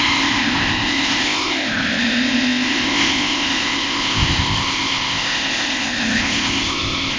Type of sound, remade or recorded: remade